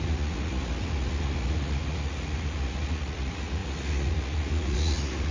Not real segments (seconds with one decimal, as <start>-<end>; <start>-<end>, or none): 0.0-5.3